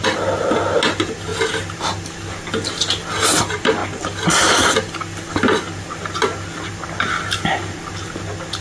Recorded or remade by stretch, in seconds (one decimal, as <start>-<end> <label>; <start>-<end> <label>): 0.0-8.6 recorded